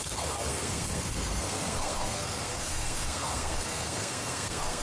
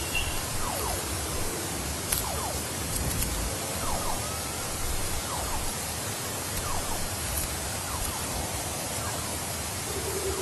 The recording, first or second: second